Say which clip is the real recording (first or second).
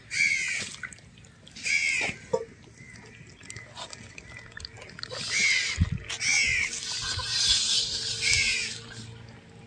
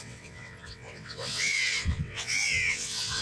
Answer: first